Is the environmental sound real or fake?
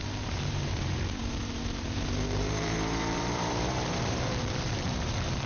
fake